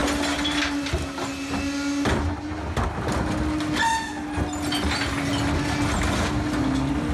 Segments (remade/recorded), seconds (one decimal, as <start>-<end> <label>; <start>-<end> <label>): 0.0-7.1 recorded